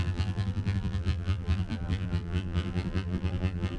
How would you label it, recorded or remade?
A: remade